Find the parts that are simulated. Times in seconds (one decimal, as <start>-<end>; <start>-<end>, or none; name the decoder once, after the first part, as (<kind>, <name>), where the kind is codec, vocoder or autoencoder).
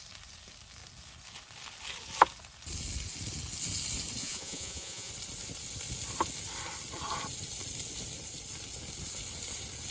4.2-5.1 (vocoder, Vocos)